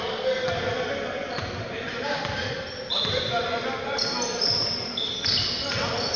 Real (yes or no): yes